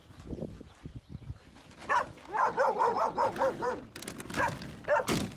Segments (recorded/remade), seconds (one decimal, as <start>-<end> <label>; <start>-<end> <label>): 0.0-5.4 recorded